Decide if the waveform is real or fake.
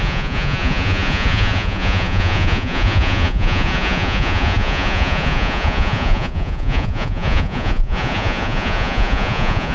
fake